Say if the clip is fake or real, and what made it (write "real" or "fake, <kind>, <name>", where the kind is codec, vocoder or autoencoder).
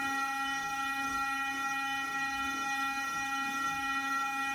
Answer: fake, codec, DAC